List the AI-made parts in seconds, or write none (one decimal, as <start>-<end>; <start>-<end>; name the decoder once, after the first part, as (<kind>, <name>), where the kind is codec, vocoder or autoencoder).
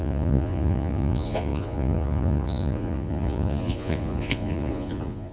0.0-5.3 (vocoder, Vocos)